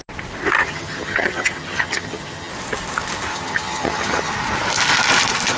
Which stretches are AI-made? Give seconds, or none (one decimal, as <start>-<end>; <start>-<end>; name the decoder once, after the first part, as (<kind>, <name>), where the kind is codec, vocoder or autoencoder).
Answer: 0.6-2.5 (vocoder, HiFi-GAN); 3.3-4.3